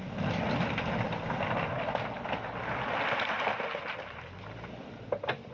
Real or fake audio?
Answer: real